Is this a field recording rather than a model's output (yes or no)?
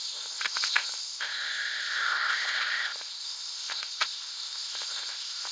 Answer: no